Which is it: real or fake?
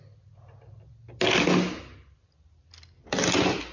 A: real